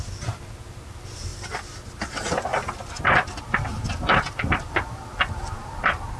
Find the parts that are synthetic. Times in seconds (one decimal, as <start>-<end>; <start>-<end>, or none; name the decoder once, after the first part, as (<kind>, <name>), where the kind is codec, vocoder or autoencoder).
0.0-1.3 (vocoder, BigVGAN v2); 2.1-6.2